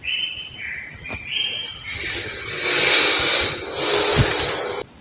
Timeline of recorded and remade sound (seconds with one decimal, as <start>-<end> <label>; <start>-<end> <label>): 0.0-1.7 recorded; 1.7-2.5 remade; 2.5-5.0 recorded